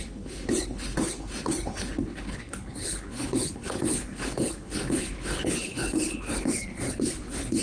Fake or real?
fake